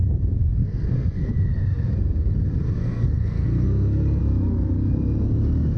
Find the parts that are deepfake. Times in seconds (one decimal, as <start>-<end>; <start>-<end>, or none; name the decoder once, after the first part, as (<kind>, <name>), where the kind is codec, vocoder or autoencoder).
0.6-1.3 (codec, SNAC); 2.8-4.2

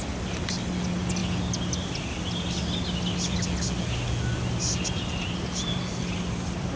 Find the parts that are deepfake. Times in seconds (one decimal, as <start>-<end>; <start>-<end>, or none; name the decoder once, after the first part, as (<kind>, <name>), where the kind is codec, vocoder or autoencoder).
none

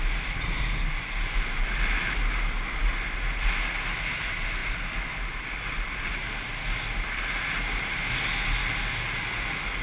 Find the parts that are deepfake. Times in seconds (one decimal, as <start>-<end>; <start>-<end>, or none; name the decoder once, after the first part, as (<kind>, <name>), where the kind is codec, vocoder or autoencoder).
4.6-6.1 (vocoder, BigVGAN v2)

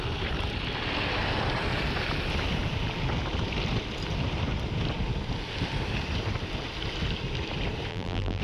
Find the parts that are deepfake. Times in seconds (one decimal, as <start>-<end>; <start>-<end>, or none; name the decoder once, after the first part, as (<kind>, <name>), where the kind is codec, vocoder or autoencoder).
7.9-8.4 (vocoder, BigVGAN v2)